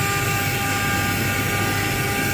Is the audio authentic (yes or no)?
yes